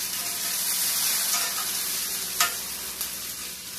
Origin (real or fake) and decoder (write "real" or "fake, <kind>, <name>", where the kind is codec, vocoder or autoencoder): real